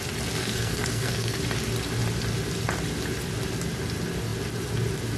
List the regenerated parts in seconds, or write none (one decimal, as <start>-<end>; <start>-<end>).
0.4-1.4